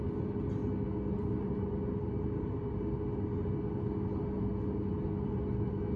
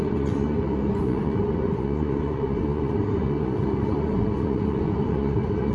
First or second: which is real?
first